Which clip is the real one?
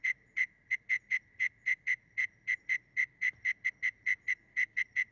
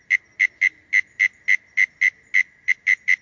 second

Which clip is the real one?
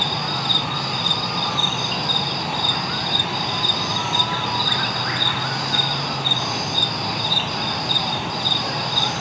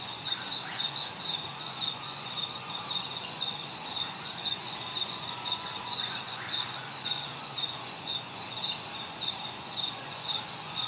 first